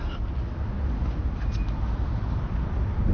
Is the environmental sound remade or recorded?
recorded